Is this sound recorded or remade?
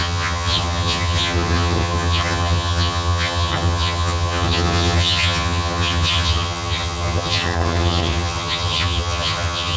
remade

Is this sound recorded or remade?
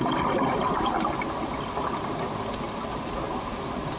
recorded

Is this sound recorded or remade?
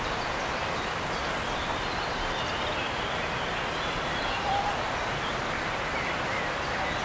recorded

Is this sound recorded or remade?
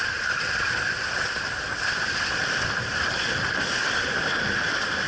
recorded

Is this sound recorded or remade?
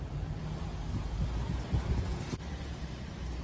remade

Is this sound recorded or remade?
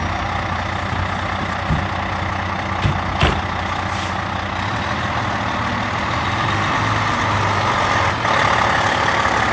recorded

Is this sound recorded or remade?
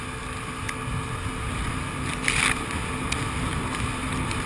recorded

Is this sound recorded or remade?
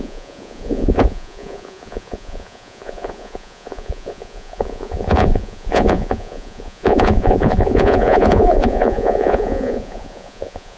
remade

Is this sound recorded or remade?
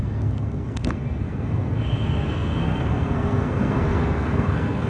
remade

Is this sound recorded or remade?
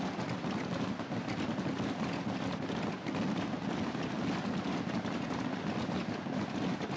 recorded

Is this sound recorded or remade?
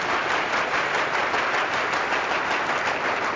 recorded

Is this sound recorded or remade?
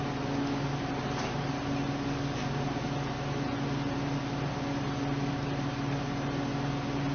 recorded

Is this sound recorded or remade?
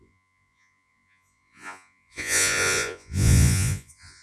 remade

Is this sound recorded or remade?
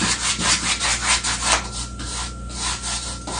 recorded